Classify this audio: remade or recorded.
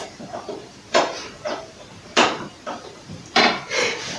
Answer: remade